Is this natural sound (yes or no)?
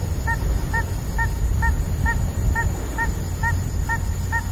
yes